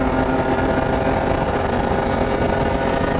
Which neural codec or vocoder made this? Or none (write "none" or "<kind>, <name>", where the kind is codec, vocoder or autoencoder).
none